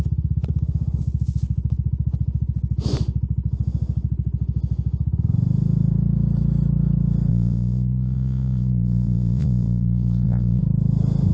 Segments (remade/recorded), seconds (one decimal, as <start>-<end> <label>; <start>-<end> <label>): 0.0-7.3 recorded; 7.3-10.6 remade; 10.6-11.3 recorded